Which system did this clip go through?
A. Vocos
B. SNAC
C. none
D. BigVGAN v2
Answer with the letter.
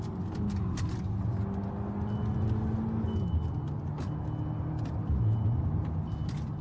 C